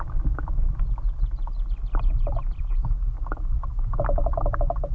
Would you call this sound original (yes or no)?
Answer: yes